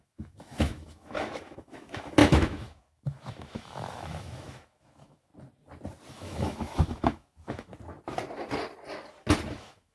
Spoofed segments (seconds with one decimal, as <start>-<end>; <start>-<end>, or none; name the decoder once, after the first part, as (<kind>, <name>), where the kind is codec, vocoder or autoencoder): 0.0-5.3 (autoencoder, DAC-VAE); 6.1-7.7; 9.5-9.9

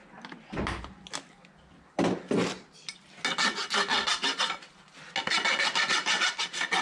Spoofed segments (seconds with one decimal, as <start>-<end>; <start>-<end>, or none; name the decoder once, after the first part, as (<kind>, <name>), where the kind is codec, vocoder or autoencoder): none